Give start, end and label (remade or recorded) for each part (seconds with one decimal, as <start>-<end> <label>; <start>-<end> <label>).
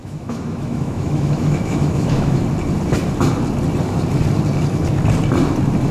0.0-2.4 remade; 2.4-5.9 recorded